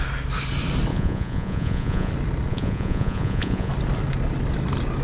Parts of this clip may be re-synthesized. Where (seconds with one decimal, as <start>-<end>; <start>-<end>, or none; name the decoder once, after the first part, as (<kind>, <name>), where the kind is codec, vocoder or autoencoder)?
0.9-2.1 (vocoder, Vocos); 2.5-3.7